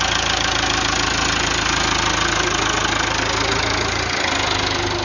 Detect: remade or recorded recorded